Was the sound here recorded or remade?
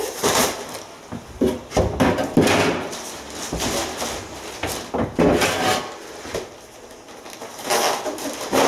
recorded